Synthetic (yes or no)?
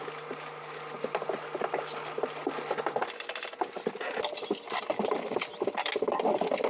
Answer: no